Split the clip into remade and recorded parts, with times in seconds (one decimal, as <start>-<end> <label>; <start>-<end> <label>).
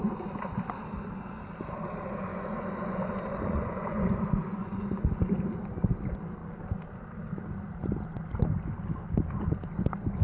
0.0-2.3 recorded; 2.3-5.2 remade; 5.2-10.2 recorded